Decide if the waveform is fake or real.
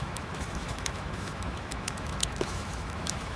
fake